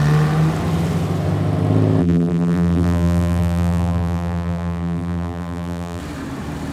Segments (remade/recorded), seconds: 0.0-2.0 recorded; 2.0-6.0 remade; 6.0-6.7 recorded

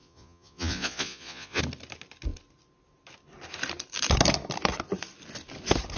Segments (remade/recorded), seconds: 0.0-1.6 remade; 1.6-6.0 recorded